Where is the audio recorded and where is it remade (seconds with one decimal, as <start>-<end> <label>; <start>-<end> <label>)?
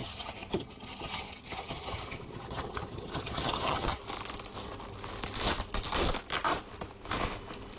0.0-4.0 remade; 4.0-7.8 recorded